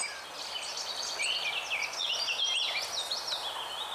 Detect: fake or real real